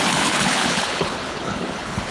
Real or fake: fake